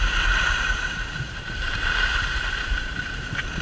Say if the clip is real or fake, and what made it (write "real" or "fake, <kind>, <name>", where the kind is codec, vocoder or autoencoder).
fake, vocoder, BigVGAN v2